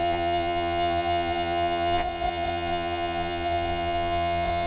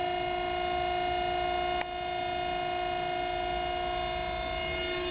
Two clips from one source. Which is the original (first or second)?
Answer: second